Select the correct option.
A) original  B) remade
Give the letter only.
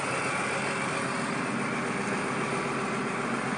A